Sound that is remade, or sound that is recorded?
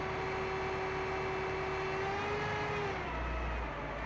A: recorded